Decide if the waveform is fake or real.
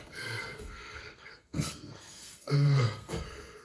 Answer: fake